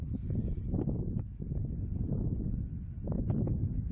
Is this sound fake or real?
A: real